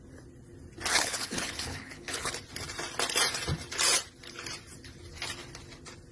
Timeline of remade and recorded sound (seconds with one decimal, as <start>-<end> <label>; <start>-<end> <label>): 0.0-0.9 recorded; 0.9-2.3 remade; 2.3-6.1 recorded

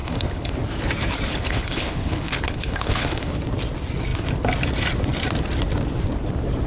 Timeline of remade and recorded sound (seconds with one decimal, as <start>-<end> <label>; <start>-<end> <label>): 0.0-0.5 remade; 0.5-1.3 recorded; 1.3-3.3 remade; 3.3-6.7 recorded